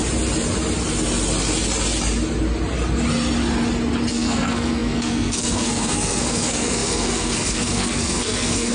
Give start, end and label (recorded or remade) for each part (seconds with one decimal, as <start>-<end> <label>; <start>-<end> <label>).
0.0-4.1 recorded; 4.1-8.7 remade